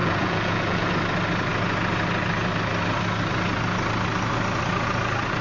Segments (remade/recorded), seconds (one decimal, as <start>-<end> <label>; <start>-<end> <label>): 0.0-0.9 remade; 0.9-5.4 recorded